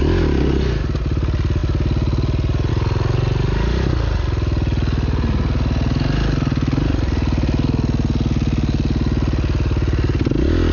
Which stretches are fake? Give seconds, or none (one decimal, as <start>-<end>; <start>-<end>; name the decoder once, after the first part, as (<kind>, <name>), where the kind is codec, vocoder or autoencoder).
none